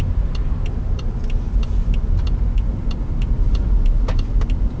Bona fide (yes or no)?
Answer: yes